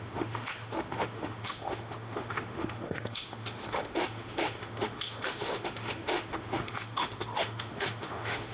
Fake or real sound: fake